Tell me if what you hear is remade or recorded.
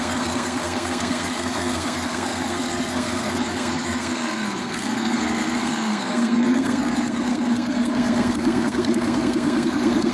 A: remade